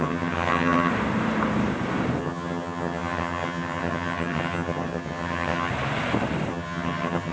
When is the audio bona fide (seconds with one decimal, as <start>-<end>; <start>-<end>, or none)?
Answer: 0.9-2.2; 5.7-6.5